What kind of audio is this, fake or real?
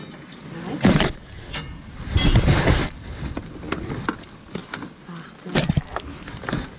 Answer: real